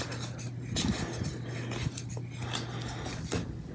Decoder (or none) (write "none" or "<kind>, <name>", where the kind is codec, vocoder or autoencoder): none